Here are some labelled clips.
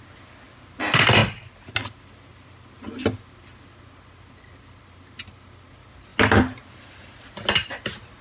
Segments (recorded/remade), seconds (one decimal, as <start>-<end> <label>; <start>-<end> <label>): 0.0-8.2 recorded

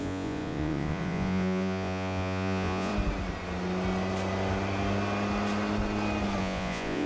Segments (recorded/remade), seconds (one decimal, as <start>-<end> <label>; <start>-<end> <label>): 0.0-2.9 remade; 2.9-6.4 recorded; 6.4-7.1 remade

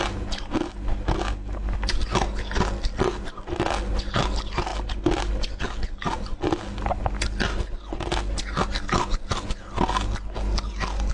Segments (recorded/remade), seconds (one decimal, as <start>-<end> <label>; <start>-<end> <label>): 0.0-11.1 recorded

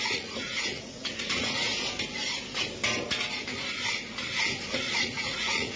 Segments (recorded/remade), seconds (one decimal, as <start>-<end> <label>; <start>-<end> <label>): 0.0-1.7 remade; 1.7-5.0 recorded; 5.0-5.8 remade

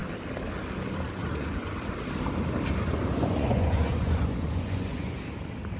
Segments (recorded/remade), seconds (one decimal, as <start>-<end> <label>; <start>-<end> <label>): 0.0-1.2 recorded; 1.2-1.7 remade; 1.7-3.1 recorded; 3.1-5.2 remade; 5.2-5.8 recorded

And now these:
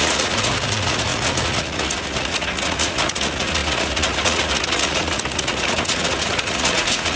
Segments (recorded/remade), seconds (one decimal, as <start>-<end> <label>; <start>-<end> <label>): 0.0-7.2 remade